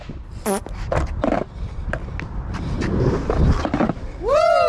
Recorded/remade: recorded